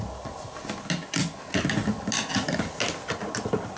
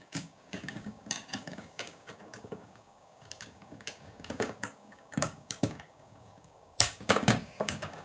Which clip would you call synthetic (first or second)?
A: second